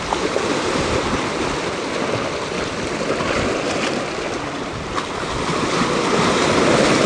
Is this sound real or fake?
real